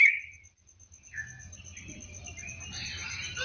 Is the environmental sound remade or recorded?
remade